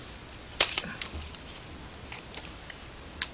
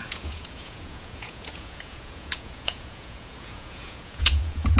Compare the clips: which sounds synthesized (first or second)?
second